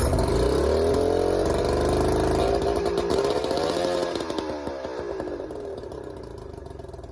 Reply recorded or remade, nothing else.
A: recorded